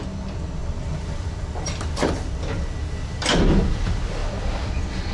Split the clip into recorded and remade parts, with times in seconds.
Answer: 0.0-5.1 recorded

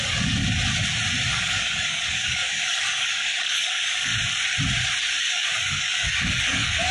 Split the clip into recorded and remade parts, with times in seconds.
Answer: 0.0-0.4 remade; 0.4-1.3 recorded; 1.3-4.1 remade; 4.1-5.2 recorded; 5.2-6.9 remade

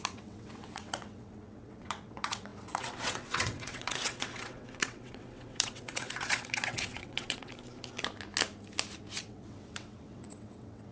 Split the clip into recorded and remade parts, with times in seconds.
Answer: 0.0-7.5 remade; 7.5-9.2 recorded; 9.2-10.9 remade

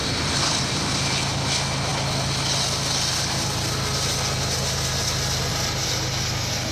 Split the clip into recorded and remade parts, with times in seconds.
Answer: 0.0-1.2 remade; 1.2-6.7 recorded

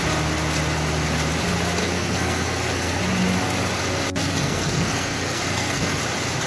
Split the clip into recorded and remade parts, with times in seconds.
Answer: 0.0-1.8 recorded; 1.8-3.0 remade; 3.0-4.2 recorded; 4.2-6.0 remade; 6.0-6.5 recorded

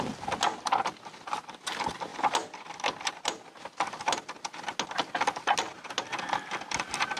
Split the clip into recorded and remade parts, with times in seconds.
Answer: 0.0-7.2 recorded

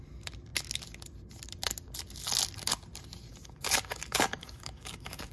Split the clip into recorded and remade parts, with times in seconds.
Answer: 0.0-3.3 recorded; 3.3-5.3 remade

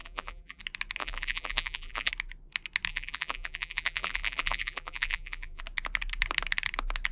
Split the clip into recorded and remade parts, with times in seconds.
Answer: 0.0-0.6 remade; 0.6-1.0 recorded; 1.0-2.1 remade; 2.1-2.9 recorded; 2.9-5.6 remade; 5.6-7.1 recorded